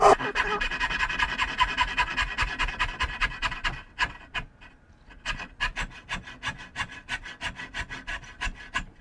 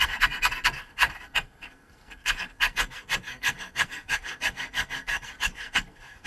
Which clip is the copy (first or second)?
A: second